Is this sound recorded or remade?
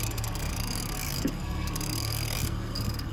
remade